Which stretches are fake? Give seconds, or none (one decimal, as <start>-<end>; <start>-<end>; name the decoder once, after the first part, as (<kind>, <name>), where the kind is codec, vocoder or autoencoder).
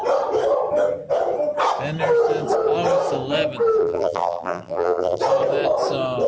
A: 3.8-5.2 (vocoder, BigVGAN v2)